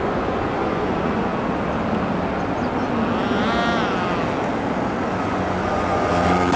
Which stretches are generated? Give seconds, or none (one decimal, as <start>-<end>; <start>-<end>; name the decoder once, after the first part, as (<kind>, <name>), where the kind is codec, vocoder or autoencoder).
0.0-1.3 (vocoder, Vocos); 5.2-6.6